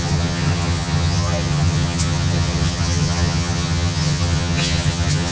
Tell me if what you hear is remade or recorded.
remade